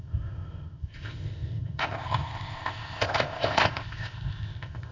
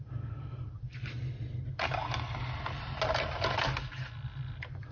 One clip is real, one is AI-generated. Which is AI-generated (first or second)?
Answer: first